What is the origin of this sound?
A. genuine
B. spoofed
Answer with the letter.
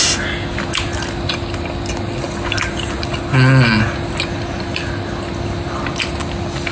A